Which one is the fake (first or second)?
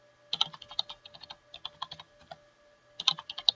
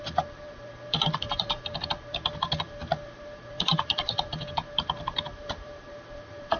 second